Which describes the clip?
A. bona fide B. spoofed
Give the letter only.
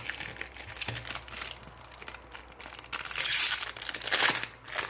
A